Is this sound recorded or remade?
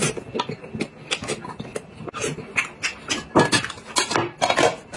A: recorded